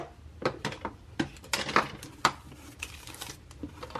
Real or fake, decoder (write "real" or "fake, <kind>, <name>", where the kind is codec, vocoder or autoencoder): real